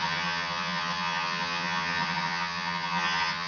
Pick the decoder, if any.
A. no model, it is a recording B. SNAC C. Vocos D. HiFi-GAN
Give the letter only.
D